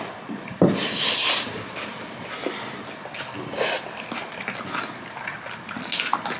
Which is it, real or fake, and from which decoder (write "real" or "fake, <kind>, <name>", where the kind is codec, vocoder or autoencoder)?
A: real